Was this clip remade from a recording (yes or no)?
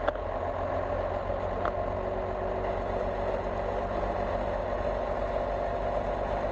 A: no